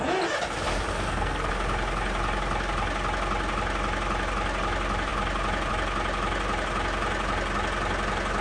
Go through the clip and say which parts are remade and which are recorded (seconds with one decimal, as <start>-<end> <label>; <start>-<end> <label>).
0.0-0.9 recorded; 0.9-1.5 remade; 1.5-8.4 recorded